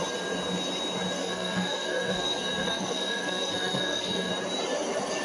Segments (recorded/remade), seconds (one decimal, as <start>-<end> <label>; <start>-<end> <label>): 0.0-1.2 recorded; 1.2-4.3 remade; 4.3-5.2 recorded